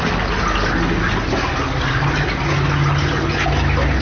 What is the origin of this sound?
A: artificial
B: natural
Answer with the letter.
B